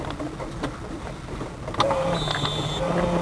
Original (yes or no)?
yes